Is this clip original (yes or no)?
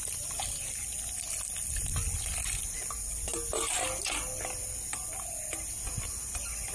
yes